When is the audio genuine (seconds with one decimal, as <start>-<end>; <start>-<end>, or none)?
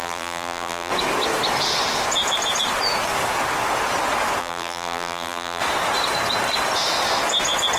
0.9-4.4; 5.6-7.8